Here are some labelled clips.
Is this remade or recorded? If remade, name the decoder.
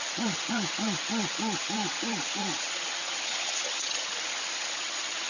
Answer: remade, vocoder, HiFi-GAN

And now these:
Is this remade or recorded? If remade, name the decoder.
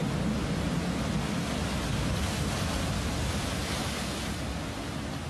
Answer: recorded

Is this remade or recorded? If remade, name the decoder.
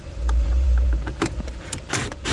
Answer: remade, vocoder, BigVGAN v2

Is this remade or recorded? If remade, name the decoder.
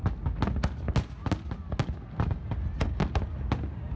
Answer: recorded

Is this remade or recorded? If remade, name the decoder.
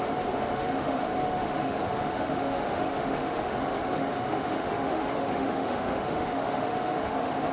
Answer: remade, autoencoder, DAC-VAE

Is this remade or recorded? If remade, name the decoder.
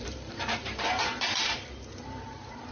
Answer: remade, vocoder, BigVGAN v2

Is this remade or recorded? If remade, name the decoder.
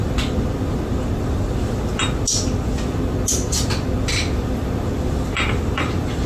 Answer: recorded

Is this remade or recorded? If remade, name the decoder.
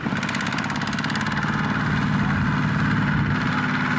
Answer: recorded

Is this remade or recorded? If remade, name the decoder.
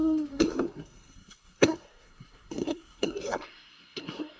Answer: remade, codec, SNAC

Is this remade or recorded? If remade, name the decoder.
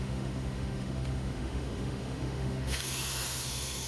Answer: remade, autoencoder, DAC-VAE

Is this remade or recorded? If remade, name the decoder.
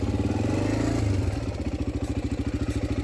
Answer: recorded